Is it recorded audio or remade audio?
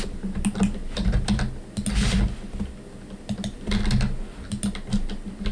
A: recorded